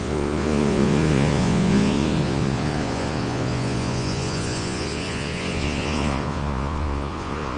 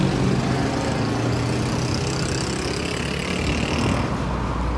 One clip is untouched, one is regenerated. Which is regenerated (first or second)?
first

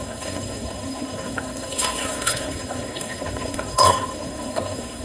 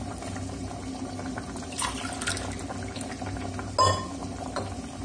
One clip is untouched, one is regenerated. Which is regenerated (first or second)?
first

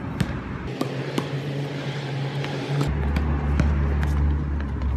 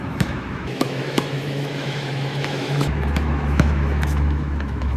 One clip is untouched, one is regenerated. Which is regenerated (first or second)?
second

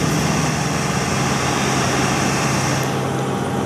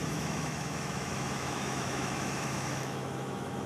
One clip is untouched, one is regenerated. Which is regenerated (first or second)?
second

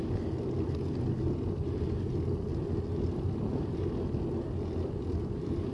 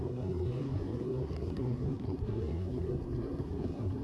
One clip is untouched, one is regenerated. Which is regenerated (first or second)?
second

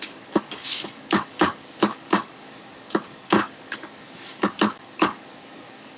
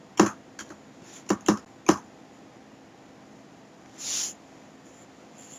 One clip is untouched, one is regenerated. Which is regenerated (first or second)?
first